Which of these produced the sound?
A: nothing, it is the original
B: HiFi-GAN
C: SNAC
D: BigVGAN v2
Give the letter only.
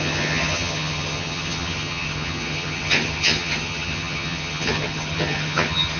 B